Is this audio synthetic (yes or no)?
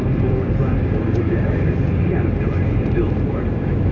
yes